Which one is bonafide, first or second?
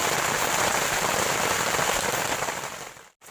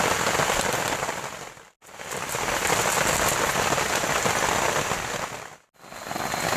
second